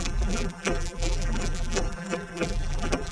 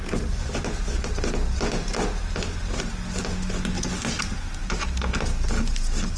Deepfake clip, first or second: first